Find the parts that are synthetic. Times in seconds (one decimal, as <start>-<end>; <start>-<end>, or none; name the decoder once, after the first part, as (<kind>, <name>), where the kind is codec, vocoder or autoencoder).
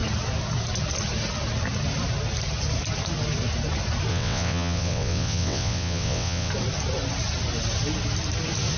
4.1-6.5 (vocoder, WaveNeXt)